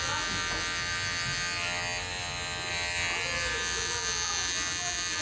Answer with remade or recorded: recorded